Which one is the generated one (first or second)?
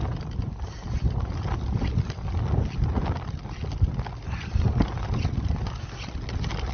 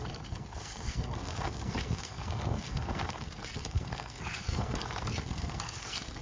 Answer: second